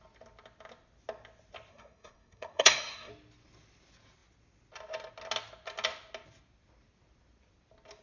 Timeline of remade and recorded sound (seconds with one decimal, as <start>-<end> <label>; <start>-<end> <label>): 0.0-1.7 recorded; 1.7-3.1 remade; 3.1-8.0 recorded